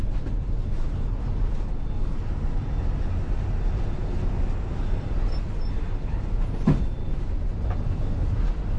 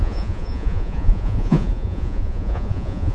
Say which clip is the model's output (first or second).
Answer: second